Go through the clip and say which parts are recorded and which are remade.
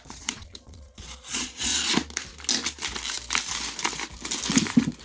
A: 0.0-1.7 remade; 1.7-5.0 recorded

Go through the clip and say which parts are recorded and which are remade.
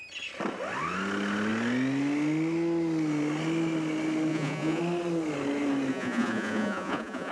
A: 0.0-4.3 recorded; 4.3-4.8 remade; 4.8-5.9 recorded; 5.9-7.3 remade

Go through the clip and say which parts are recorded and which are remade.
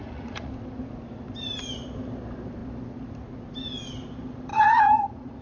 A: 0.0-0.5 remade; 0.5-4.5 recorded; 4.5-5.4 remade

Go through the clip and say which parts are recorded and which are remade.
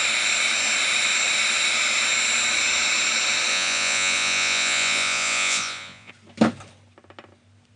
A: 0.0-3.5 recorded; 3.5-6.1 remade; 6.1-7.8 recorded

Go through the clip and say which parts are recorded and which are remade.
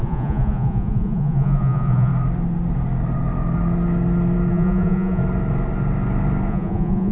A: 0.0-2.1 remade; 2.1-4.5 recorded; 4.5-5.2 remade; 5.2-6.5 recorded; 6.5-7.1 remade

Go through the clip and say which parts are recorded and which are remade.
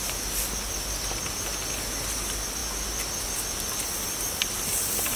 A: 0.0-5.2 recorded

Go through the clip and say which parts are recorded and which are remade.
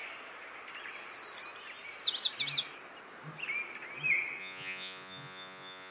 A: 0.0-4.4 recorded; 4.4-5.9 remade